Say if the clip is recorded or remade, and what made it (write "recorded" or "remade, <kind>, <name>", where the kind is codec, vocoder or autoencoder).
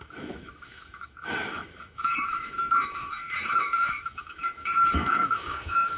remade, autoencoder, DAC-VAE